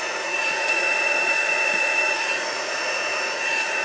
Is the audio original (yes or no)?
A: no